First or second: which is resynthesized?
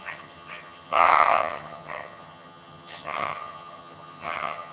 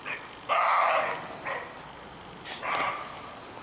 first